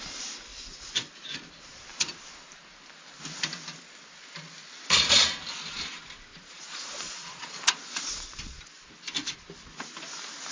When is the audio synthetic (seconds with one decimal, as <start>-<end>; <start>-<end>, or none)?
6.3-8.6